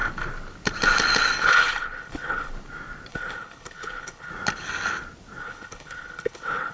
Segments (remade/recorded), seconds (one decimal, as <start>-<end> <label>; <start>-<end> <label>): 0.0-1.5 recorded; 1.5-2.5 remade; 2.5-3.1 recorded; 3.1-4.3 remade; 4.3-5.4 recorded; 5.4-6.7 remade